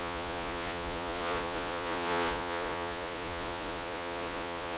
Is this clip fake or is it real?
fake